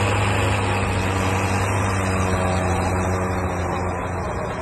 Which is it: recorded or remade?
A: recorded